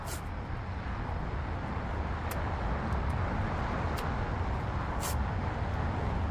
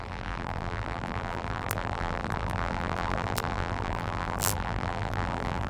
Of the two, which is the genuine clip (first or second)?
first